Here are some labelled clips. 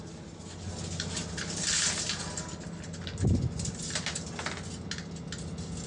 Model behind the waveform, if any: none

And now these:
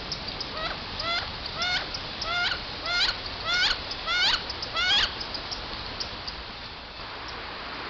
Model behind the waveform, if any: none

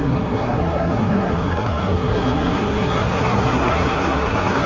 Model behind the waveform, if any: codec, SNAC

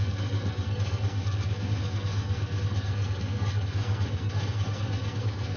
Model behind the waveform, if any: codec, SNAC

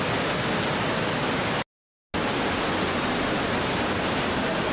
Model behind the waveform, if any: none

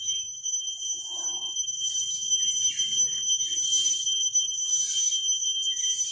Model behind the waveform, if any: none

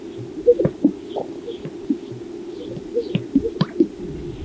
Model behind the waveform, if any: none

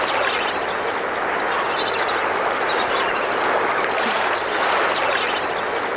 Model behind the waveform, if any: none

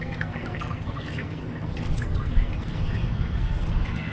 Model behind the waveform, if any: codec, SNAC